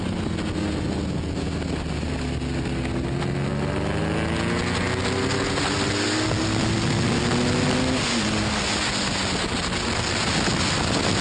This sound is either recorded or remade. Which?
recorded